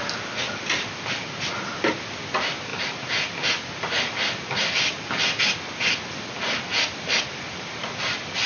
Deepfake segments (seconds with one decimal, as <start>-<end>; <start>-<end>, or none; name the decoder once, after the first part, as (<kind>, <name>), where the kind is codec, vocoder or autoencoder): none